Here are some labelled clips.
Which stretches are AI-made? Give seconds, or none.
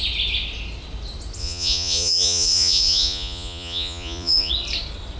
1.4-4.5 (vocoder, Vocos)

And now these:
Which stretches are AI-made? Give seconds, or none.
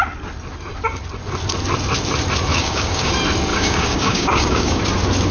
2.5-3.1 (codec, DAC); 3.5-4.8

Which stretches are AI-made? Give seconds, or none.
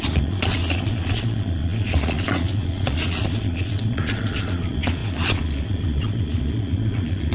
0.0-7.3 (vocoder, Vocos)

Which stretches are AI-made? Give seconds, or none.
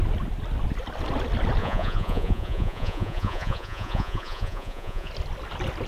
1.6-5.1 (vocoder, Vocos)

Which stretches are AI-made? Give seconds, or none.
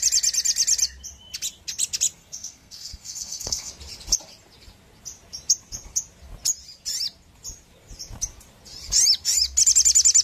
2.2-3.7 (codec, SNAC)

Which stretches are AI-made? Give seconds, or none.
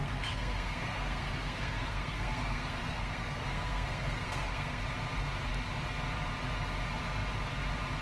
0.0-4.8 (codec, SNAC)